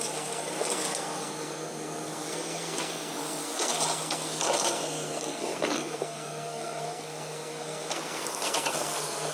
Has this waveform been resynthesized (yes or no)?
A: yes